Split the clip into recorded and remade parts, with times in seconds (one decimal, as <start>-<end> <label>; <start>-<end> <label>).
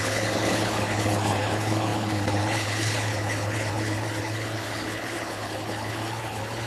0.0-6.7 remade